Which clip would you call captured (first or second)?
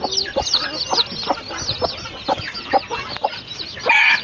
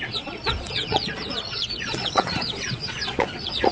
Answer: first